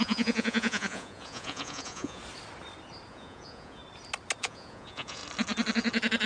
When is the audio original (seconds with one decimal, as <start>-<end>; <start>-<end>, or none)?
2.2-3.1; 3.8-4.4; 5.2-6.3